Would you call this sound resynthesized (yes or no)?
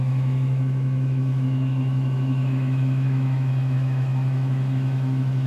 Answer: yes